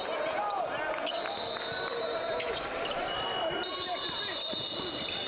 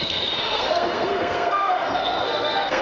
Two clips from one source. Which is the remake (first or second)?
second